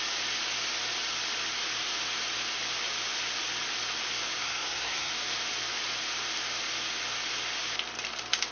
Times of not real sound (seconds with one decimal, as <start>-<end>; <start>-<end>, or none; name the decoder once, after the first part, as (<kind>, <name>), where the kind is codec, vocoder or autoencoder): 4.4-5.1 (codec, SNAC)